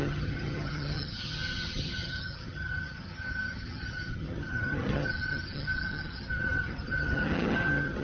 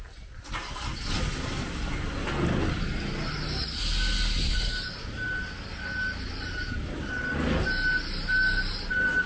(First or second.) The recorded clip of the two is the second